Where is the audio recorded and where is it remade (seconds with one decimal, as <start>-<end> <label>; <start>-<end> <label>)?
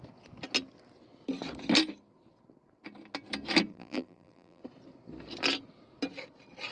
0.0-3.7 recorded; 3.7-4.6 remade; 4.6-6.7 recorded